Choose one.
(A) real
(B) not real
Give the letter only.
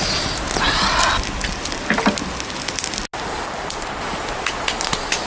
A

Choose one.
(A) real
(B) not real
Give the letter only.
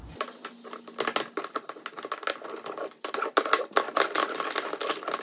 A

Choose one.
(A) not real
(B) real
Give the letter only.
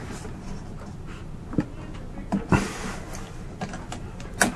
B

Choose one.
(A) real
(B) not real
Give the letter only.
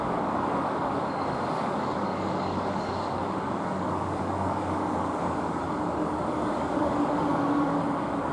B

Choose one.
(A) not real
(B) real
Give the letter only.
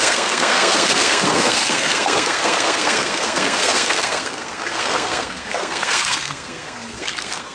A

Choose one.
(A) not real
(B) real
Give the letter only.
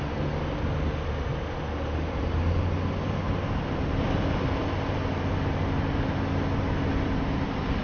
B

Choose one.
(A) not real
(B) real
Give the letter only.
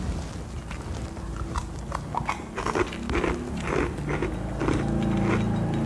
B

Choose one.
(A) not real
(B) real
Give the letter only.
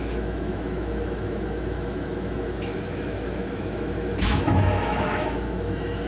A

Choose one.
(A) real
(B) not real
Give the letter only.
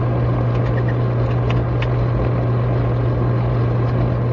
A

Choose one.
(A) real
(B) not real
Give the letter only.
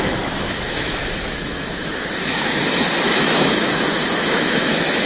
B